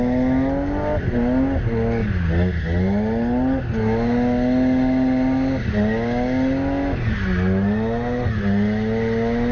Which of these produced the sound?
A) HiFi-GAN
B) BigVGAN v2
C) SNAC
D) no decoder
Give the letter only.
D